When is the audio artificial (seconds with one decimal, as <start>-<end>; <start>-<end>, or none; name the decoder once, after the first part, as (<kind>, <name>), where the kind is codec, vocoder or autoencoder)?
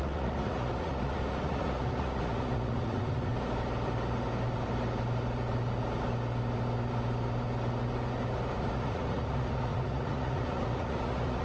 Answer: 0.0-3.3 (vocoder, Vocos); 8.6-11.4